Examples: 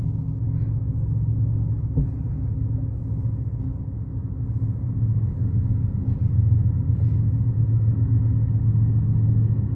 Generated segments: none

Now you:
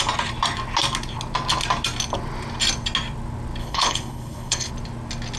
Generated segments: 3.6-4.7